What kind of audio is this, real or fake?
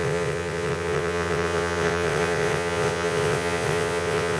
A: fake